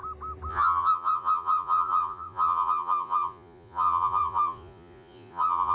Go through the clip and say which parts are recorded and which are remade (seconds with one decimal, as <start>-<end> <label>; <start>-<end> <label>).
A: 0.0-0.5 recorded; 0.5-5.7 remade